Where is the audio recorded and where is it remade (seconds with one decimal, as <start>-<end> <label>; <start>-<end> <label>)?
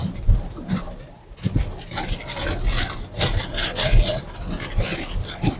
0.0-1.6 remade; 1.6-2.7 recorded; 2.7-3.4 remade; 3.4-5.6 recorded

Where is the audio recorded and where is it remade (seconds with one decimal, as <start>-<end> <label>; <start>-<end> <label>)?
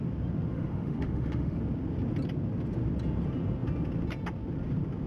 0.0-0.5 recorded; 0.5-1.6 remade; 1.6-5.1 recorded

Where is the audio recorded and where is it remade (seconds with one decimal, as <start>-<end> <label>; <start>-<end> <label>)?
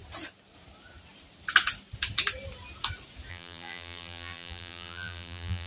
0.0-3.3 recorded; 3.3-5.7 remade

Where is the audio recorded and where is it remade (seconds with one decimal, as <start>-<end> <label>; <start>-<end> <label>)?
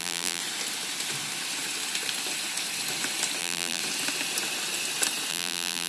0.0-0.4 remade; 0.4-3.4 recorded; 3.4-3.8 remade; 3.8-5.3 recorded; 5.3-5.9 remade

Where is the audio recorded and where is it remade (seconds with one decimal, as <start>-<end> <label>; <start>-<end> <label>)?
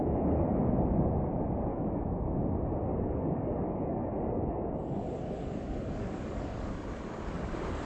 0.0-0.6 remade; 0.6-1.7 recorded; 1.7-2.3 remade; 2.3-2.9 recorded; 2.9-7.9 remade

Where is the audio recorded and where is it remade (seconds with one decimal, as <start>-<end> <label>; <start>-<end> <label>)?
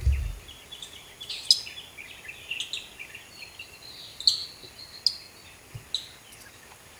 0.0-7.0 recorded